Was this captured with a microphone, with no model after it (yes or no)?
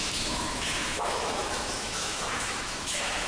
no